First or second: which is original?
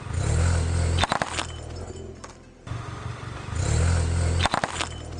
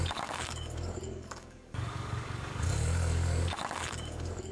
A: first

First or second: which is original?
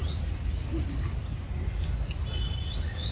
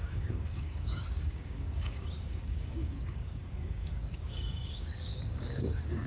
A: first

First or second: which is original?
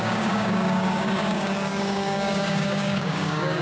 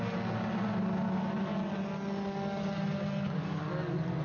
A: second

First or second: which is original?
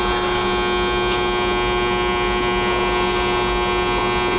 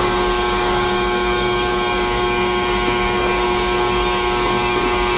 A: first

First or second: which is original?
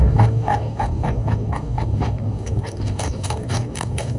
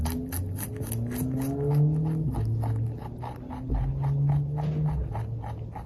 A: second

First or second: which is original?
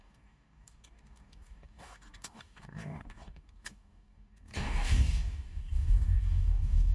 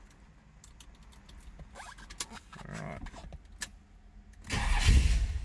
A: second